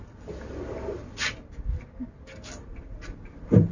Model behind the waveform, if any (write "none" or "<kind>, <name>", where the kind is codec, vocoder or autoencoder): none